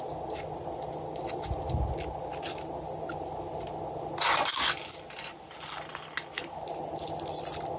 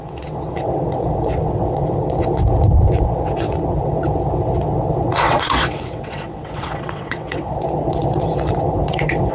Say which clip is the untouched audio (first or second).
first